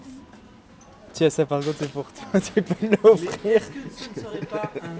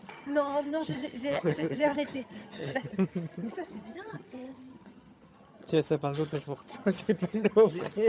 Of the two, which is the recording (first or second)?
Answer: first